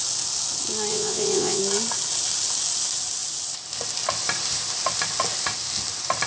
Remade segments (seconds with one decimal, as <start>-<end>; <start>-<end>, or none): 0.9-1.6